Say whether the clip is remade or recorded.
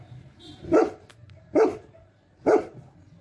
remade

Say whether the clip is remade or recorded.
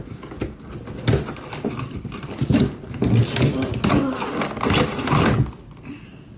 recorded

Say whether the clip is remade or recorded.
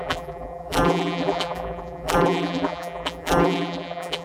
remade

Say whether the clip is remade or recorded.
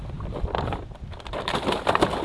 remade